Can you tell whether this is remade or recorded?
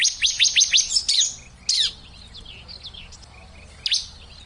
recorded